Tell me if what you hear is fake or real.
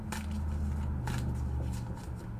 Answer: real